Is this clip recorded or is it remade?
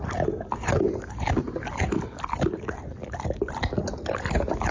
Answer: recorded